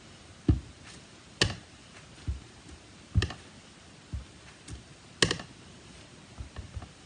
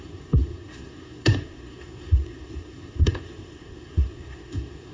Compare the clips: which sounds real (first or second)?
first